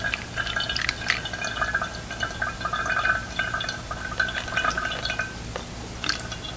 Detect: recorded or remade recorded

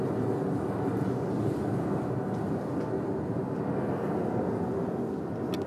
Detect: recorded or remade recorded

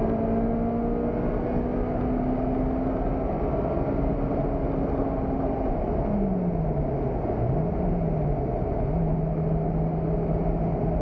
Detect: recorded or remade recorded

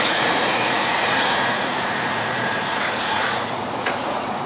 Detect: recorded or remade remade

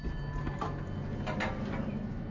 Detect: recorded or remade recorded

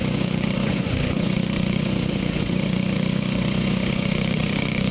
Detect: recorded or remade remade